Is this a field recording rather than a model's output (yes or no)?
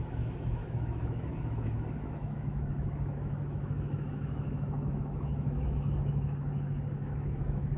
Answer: no